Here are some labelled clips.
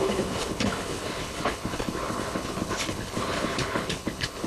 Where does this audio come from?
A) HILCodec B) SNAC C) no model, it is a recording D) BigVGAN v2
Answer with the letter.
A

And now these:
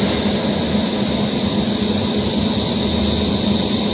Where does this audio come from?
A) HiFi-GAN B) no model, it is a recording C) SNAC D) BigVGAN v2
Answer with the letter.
B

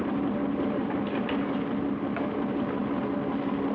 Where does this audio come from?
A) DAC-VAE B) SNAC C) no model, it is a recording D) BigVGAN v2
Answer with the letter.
C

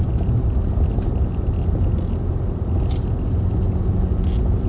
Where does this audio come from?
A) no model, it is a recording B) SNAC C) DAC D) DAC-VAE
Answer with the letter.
A